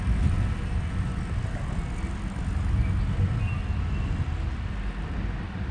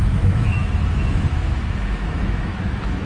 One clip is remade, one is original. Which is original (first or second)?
first